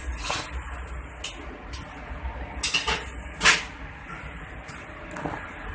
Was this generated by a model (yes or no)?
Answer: no